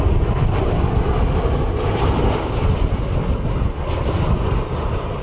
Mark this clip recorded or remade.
recorded